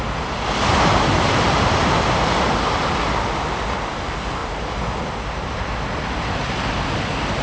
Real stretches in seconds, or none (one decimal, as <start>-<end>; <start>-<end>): 0.0-7.4